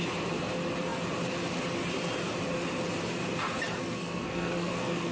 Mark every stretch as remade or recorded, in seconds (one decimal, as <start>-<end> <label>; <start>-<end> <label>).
0.0-3.8 recorded; 3.8-5.1 remade